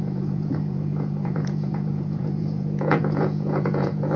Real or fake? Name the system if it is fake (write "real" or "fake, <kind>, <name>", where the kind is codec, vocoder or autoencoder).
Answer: fake, vocoder, Vocos